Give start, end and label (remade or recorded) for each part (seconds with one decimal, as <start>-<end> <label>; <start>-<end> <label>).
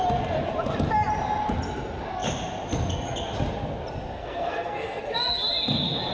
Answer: 0.0-4.2 recorded; 4.2-5.0 remade; 5.0-6.1 recorded